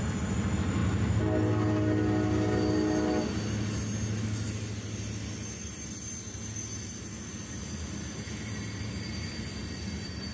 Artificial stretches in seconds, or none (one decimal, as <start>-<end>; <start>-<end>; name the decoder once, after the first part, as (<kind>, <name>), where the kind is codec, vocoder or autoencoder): none